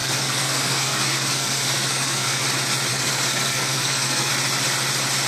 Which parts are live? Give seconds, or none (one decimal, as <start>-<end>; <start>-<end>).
2.4-2.9; 4.3-5.3